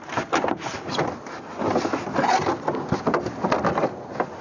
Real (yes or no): yes